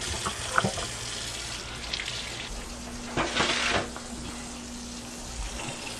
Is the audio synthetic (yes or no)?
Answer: no